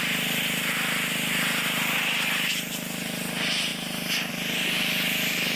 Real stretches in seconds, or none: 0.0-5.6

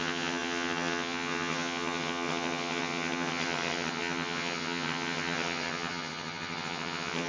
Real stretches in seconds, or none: none

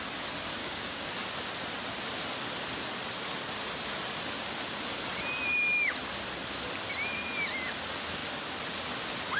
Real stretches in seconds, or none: 0.0-0.6; 1.1-9.4

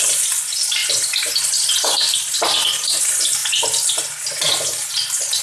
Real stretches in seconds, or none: 0.0-5.4

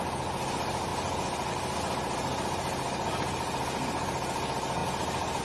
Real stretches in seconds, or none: 0.0-5.4

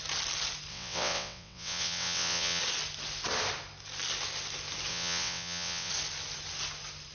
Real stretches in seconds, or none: 0.0-0.7; 2.6-4.9; 5.9-7.1

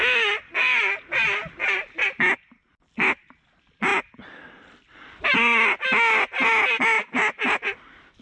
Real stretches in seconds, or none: 0.0-8.2